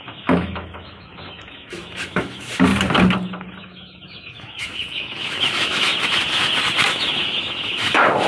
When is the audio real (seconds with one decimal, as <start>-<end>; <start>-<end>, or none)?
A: 2.7-3.6; 5.9-6.9